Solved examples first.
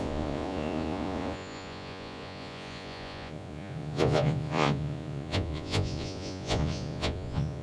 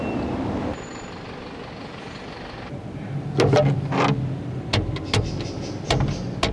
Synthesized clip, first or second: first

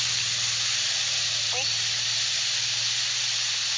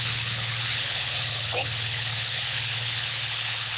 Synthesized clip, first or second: second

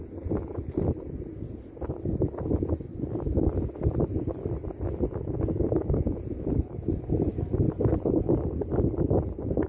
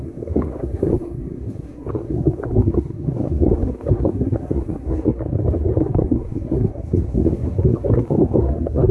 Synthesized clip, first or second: second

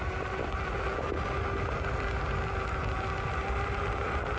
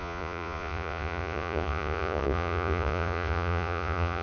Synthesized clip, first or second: second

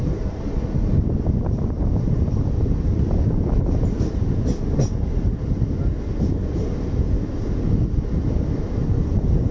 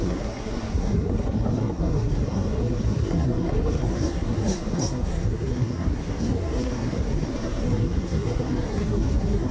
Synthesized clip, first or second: second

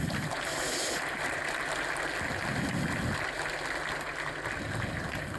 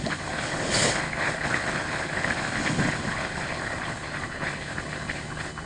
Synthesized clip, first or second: second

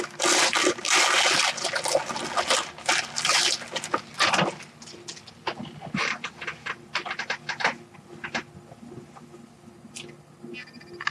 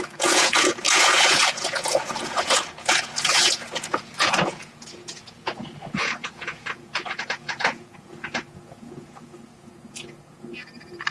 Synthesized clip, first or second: second